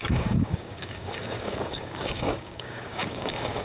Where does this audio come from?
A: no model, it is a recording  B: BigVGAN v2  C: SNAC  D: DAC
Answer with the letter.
D